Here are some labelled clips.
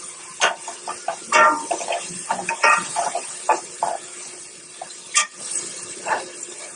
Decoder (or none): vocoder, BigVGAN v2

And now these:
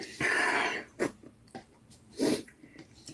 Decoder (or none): vocoder, BigVGAN v2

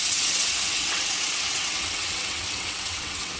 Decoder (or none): vocoder, WaveNeXt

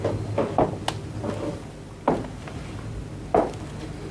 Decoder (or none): none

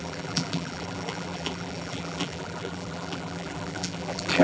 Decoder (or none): vocoder, BigVGAN v2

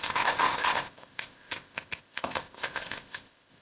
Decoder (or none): codec, ZipCodec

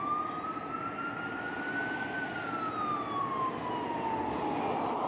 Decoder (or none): none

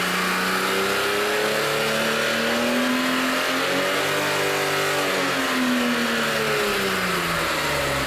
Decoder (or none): none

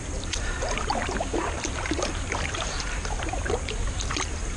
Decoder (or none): vocoder, BigVGAN v2